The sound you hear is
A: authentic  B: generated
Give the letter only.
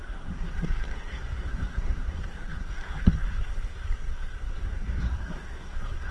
B